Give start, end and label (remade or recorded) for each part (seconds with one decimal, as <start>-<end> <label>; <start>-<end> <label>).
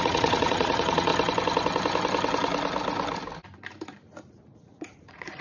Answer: 0.0-1.1 remade; 1.1-4.3 recorded; 4.3-5.4 remade